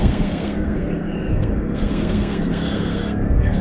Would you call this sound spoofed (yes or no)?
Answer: yes